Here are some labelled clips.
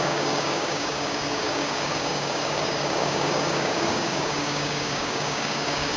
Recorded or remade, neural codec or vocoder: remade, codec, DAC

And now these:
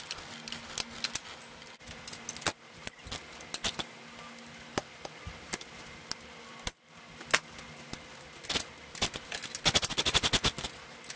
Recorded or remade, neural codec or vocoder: recorded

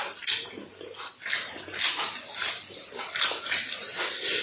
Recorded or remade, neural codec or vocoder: recorded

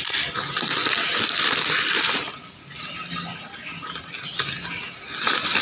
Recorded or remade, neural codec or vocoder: recorded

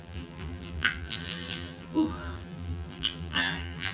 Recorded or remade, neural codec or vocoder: remade, vocoder, BigVGAN v2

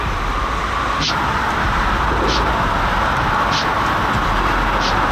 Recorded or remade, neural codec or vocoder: recorded